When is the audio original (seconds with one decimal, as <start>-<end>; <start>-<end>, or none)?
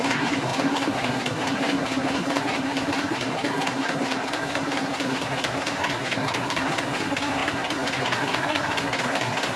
none